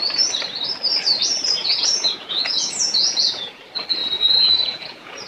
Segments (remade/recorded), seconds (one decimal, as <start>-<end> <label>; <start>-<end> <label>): 0.0-1.6 recorded; 1.6-3.6 remade; 3.6-4.0 recorded; 4.0-5.3 remade